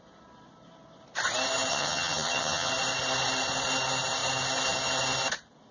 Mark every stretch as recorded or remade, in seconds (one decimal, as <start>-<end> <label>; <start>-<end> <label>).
0.0-1.7 recorded; 1.7-2.7 remade; 2.7-5.7 recorded